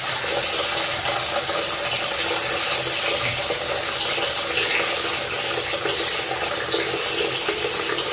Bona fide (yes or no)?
yes